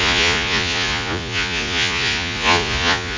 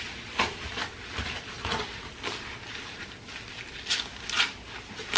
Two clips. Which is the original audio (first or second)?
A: second